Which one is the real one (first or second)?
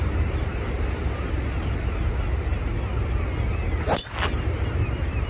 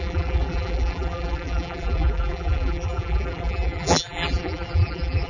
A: first